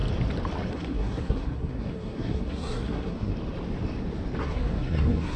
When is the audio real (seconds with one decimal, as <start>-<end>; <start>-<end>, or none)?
0.0-0.7; 3.3-4.4